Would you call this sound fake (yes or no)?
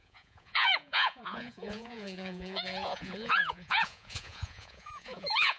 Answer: yes